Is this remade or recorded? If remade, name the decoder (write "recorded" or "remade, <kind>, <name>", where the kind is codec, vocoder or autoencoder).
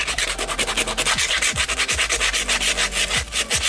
recorded